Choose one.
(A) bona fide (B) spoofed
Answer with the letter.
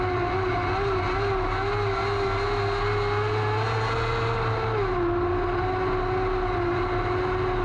A